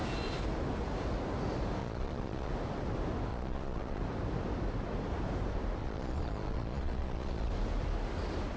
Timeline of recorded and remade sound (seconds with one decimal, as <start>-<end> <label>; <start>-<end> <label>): 0.0-1.8 recorded; 1.8-2.5 remade; 2.5-3.3 recorded; 3.3-4.0 remade; 4.0-5.8 recorded; 5.8-7.5 remade; 7.5-8.6 recorded